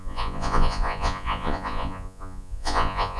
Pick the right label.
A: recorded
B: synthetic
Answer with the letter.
B